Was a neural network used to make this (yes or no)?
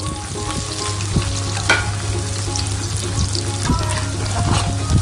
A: no